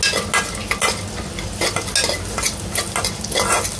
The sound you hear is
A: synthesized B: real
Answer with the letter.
B